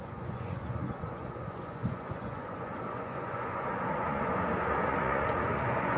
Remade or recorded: remade